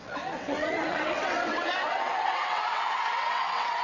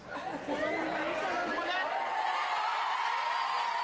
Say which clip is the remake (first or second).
first